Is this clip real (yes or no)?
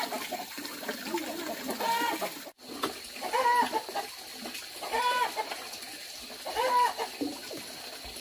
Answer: yes